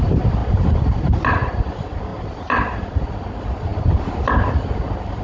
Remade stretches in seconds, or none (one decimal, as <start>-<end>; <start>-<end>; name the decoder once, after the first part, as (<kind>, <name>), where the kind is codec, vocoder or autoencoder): 0.4-1.0 (vocoder, BigVGAN v2); 2.1-3.1